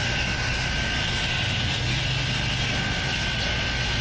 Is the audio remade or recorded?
recorded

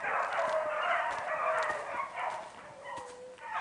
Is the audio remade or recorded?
recorded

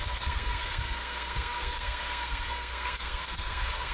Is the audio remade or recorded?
remade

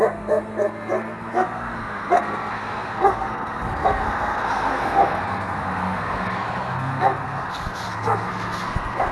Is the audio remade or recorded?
remade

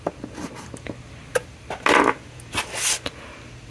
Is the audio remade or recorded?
recorded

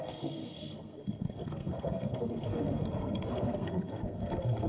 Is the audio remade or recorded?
remade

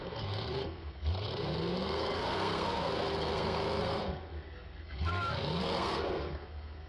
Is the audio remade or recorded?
remade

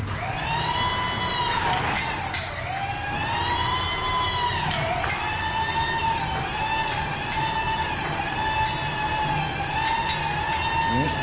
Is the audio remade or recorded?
recorded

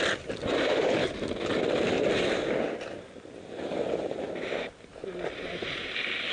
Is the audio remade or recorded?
recorded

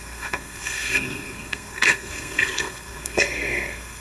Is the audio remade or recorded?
remade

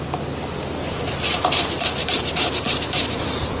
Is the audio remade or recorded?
recorded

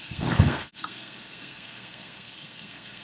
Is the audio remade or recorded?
remade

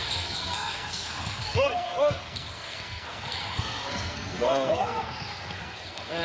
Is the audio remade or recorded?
remade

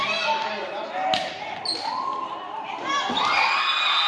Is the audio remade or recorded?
recorded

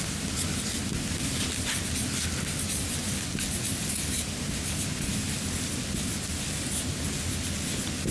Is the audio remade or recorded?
recorded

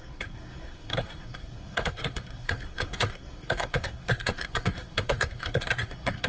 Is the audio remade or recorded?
remade